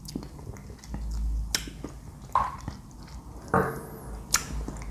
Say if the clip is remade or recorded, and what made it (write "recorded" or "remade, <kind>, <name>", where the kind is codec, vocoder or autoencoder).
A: recorded